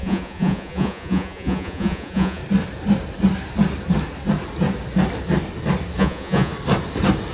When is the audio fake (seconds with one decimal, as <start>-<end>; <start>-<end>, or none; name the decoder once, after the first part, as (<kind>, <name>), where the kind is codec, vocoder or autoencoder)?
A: 0.0-2.4 (vocoder, Vocos); 6.0-6.5